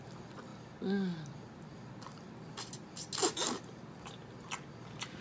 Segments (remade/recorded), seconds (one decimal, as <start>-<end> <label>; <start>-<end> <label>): 0.0-5.2 recorded